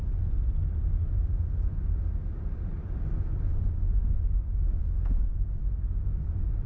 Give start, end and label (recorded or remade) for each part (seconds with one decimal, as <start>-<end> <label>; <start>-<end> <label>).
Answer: 0.0-1.0 remade; 1.0-4.8 recorded; 4.8-5.6 remade; 5.6-6.3 recorded; 6.3-6.7 remade